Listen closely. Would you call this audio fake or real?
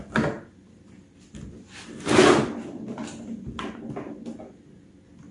real